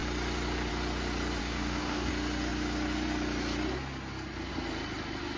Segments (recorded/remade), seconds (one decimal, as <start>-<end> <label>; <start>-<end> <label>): 0.0-1.4 recorded; 1.4-2.1 remade; 2.1-5.4 recorded